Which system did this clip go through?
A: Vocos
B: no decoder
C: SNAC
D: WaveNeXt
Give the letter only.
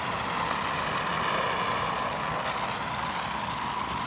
B